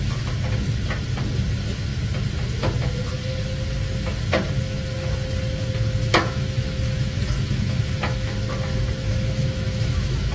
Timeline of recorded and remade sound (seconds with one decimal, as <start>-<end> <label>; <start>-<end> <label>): 0.0-6.0 recorded; 6.0-8.3 remade; 8.3-9.0 recorded; 9.0-10.3 remade